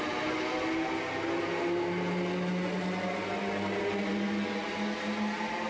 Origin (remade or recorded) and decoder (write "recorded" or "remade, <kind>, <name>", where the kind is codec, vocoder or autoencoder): recorded